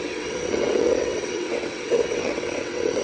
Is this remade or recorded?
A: remade